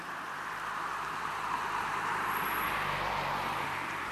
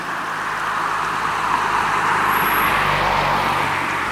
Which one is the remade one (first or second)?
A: first